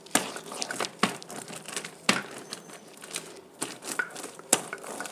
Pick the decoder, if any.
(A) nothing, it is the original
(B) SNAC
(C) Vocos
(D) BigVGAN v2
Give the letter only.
A